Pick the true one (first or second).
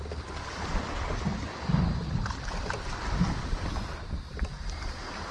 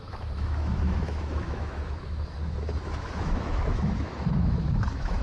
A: first